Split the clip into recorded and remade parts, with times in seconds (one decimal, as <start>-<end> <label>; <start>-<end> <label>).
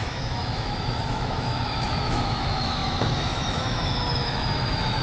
0.0-5.0 remade